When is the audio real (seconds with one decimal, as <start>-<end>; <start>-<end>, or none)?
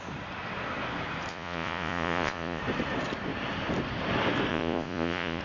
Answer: 0.0-1.3; 2.6-4.5